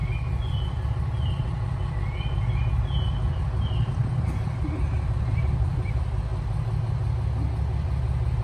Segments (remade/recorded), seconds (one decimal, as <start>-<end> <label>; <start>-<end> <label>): 0.0-2.6 remade; 2.6-3.3 recorded; 3.3-4.0 remade; 4.0-5.4 recorded; 5.4-8.4 remade